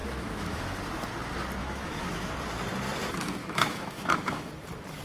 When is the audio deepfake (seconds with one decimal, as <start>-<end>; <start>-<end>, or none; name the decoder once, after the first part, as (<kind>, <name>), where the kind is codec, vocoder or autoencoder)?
0.0-0.6 (autoencoder, DAC-VAE); 1.6-2.3; 3.4-4.5

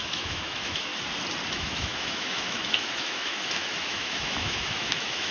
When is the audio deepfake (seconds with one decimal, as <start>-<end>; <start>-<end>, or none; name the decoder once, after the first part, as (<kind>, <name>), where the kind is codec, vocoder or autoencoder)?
0.0-0.9 (autoencoder, DAC-VAE); 1.5-5.3

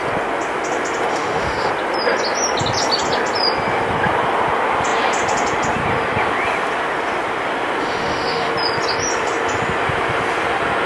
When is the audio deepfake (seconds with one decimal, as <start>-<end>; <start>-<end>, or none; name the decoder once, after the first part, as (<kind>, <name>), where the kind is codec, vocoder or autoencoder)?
1.1-1.7 (autoencoder, DAC-VAE); 7.8-8.5

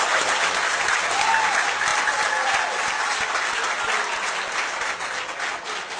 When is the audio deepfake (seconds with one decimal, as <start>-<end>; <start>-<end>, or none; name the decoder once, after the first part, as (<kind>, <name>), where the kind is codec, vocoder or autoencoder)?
none

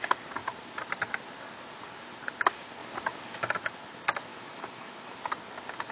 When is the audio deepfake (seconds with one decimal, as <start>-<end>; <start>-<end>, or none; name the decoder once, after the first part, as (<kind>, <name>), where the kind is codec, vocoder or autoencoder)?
4.3-5.2 (autoencoder, DAC-VAE)

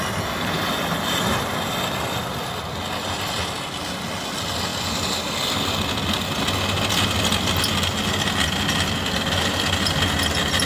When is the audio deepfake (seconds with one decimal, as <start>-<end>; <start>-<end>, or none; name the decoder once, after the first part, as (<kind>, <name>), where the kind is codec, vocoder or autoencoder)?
none